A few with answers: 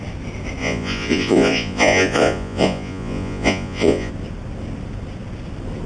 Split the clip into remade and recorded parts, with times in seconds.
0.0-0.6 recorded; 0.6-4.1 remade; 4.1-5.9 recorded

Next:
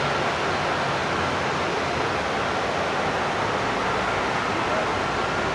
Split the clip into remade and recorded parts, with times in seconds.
0.0-5.5 recorded

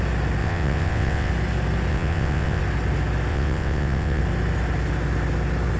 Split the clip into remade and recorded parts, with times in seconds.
0.0-0.4 recorded; 0.4-1.3 remade; 1.3-1.9 recorded; 1.9-2.6 remade; 2.6-3.3 recorded; 3.3-4.2 remade; 4.2-5.8 recorded

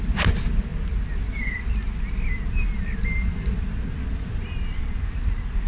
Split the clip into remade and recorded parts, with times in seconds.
0.0-5.7 recorded